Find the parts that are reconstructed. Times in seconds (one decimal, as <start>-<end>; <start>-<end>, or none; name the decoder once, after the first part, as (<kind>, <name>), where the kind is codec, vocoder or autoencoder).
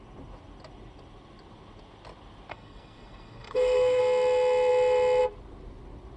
2.5-4.0 (codec, SNAC)